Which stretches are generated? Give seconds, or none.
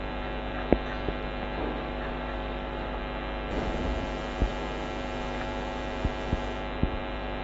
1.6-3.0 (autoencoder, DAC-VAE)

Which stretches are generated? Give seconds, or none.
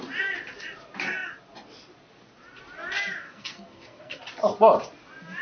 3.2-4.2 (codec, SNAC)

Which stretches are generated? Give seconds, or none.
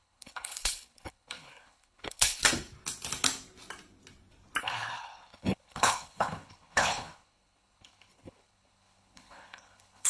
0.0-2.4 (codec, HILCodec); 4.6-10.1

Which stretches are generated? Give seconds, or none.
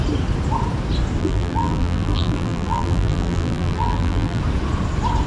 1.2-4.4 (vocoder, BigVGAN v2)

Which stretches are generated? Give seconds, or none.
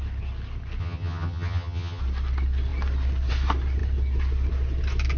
0.8-2.0 (vocoder, HiFi-GAN)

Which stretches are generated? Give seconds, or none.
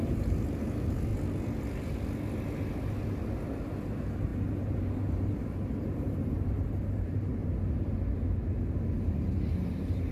0.0-1.1 (vocoder, BigVGAN v2); 3.8-7.4; 9.5-10.1